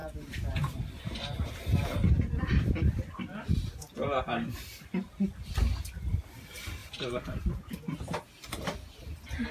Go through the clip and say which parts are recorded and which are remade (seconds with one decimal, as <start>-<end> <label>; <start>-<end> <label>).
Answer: 0.0-3.6 remade; 3.6-6.8 recorded; 6.8-7.5 remade; 7.5-9.5 recorded